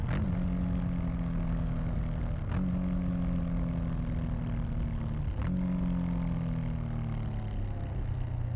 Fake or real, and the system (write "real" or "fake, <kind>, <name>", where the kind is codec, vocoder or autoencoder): real